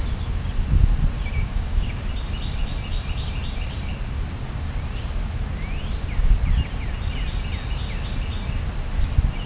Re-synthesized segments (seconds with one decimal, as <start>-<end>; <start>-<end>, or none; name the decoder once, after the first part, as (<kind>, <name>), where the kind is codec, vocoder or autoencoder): 1.4-2.0 (codec, DAC)